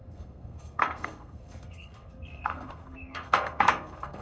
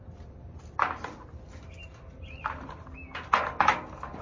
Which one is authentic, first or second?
second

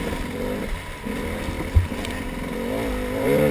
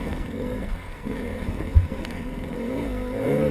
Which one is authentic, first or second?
first